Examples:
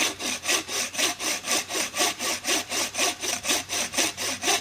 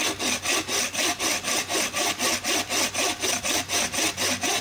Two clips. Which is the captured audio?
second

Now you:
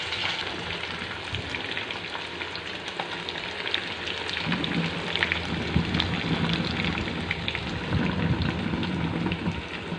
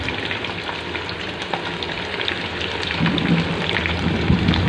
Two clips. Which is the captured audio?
first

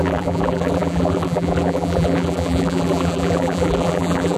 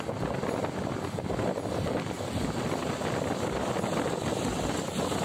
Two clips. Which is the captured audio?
second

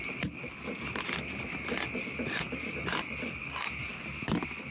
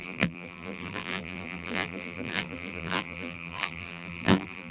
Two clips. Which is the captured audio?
first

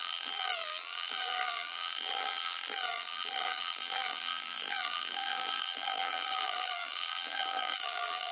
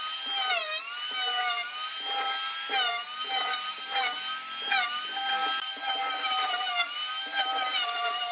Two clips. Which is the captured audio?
second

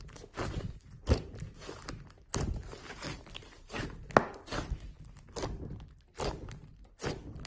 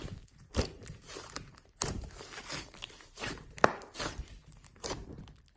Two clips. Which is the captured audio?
first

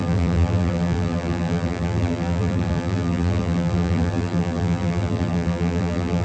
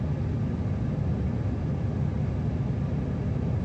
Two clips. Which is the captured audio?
second